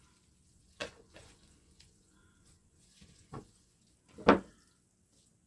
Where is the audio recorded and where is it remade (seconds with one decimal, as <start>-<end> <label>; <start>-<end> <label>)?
0.0-0.5 recorded; 0.5-3.8 remade; 3.8-5.5 recorded